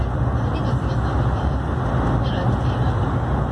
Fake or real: real